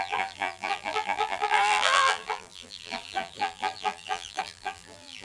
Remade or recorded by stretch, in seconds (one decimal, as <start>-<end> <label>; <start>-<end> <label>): 0.0-5.2 remade